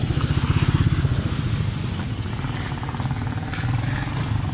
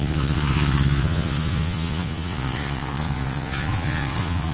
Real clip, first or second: first